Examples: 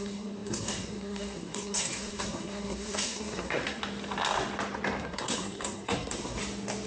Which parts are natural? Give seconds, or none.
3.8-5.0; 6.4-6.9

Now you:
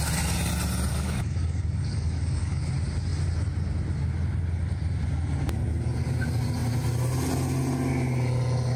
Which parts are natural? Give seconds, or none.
0.0-0.9; 2.6-8.8

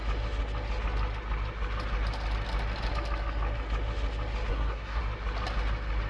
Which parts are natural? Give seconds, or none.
0.0-4.5; 5.0-6.1

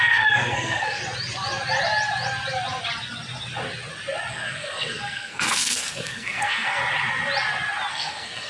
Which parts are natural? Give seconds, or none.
1.0-4.3; 6.8-7.9

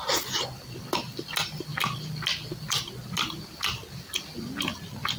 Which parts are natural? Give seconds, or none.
0.0-5.2